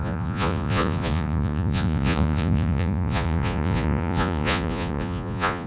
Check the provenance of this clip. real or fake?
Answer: fake